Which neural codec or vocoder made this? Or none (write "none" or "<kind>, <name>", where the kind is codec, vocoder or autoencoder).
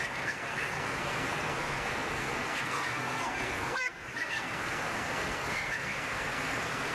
codec, SNAC